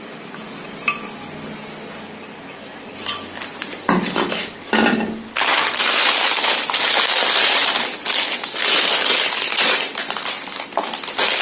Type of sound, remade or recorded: recorded